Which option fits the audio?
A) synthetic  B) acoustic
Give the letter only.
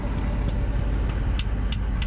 B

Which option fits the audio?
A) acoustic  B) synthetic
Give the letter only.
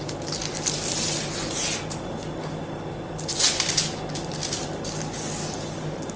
A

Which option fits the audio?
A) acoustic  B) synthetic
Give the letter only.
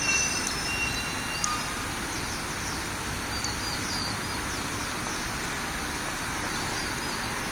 A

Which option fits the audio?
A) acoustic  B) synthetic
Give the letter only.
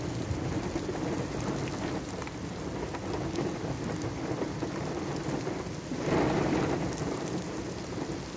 A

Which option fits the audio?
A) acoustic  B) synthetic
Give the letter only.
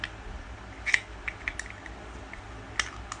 A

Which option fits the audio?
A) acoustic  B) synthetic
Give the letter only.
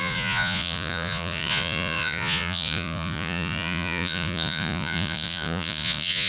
B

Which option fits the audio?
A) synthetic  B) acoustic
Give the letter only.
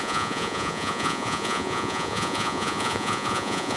A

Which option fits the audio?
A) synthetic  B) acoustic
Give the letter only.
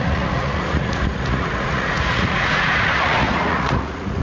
A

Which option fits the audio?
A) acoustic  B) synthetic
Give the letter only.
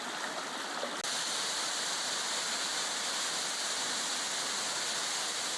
A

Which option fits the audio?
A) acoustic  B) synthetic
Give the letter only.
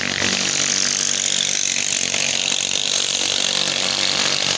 A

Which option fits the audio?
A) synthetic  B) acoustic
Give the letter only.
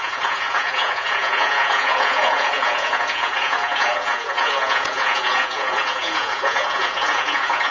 A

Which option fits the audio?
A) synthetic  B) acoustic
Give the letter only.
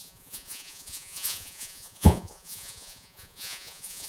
A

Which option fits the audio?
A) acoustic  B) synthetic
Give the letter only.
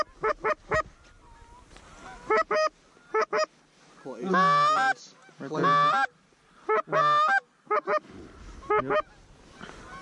A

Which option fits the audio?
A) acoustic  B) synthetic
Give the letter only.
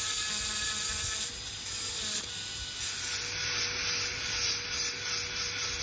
A